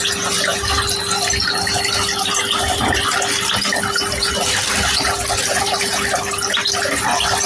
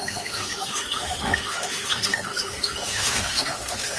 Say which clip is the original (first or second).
first